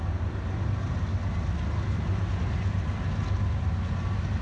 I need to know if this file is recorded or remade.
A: recorded